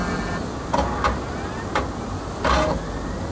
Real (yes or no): yes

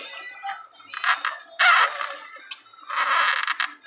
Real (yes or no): yes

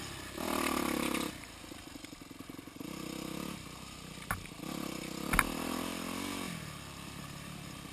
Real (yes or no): yes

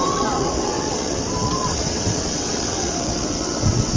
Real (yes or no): no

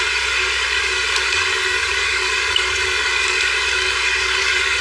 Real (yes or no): no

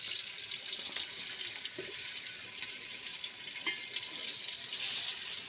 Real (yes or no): yes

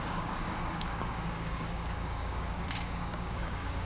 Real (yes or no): no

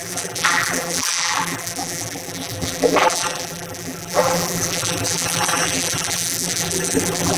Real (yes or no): no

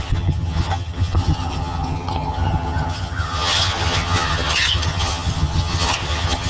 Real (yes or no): no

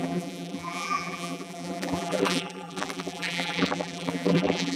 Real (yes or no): no